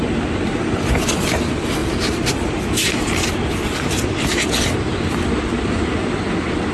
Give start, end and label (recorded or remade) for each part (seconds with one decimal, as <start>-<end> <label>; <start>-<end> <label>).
0.0-6.7 remade